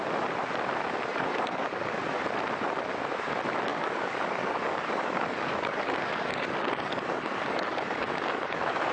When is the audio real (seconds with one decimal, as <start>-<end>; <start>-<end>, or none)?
0.0-1.1; 2.0-3.7